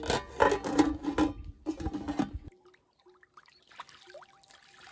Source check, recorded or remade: recorded